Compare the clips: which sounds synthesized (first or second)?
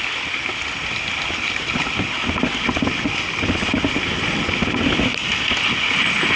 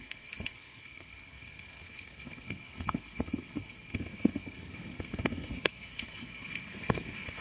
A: second